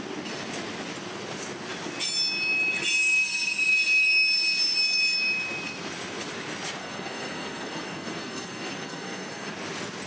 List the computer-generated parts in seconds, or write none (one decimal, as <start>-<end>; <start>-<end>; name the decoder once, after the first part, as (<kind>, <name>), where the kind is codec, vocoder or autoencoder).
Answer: 6.8-9.5 (codec, SNAC)

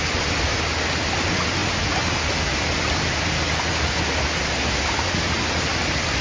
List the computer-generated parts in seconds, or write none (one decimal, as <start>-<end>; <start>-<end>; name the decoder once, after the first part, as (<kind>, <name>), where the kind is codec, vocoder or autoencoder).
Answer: none

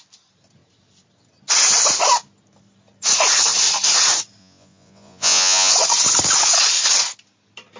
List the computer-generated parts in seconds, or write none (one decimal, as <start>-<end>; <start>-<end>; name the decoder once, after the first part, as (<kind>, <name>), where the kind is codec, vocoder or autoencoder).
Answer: 4.4-5.7 (vocoder, Vocos)

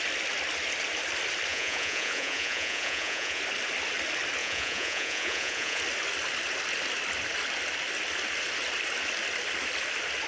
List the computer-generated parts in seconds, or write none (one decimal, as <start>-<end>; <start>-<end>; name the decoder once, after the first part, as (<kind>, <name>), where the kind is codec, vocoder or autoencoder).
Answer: 1.5-3.4 (vocoder, Vocos); 4.4-5.8

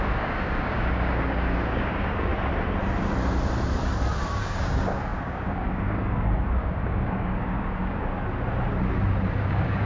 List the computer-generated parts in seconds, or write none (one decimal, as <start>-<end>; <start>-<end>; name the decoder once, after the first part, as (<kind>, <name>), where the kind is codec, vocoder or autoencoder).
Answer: 0.0-2.3 (codec, DAC); 4.3-8.1; 9.4-9.9

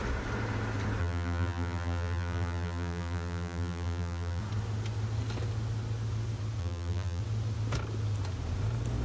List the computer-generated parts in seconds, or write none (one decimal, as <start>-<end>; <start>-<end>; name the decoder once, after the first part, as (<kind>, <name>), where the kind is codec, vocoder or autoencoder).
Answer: 1.0-4.4 (vocoder, BigVGAN v2); 6.6-7.2

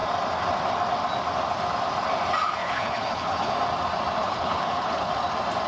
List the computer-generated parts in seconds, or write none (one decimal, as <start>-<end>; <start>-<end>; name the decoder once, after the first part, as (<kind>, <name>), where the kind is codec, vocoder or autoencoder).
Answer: 2.6-3.5 (codec, HILCodec); 4.2-5.1

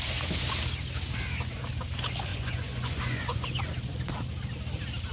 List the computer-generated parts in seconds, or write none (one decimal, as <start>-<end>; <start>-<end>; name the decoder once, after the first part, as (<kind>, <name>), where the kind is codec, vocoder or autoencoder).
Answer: 2.3-3.5 (vocoder, Vocos)